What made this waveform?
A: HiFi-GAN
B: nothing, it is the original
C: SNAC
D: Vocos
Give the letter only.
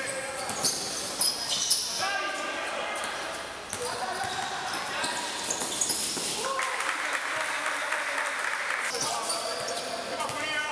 B